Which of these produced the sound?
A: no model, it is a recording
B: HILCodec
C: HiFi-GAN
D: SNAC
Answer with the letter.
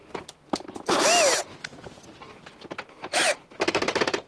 A